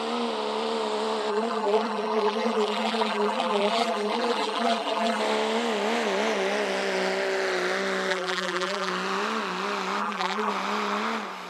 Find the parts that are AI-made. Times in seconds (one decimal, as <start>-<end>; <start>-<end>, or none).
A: 1.3-5.2; 8.1-8.9; 10.0-10.5